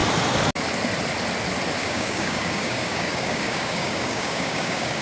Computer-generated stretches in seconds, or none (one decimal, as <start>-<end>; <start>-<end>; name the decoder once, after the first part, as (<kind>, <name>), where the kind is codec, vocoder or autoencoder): 1.8-5.0 (codec, DAC)